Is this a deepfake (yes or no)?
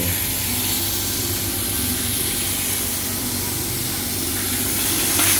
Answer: no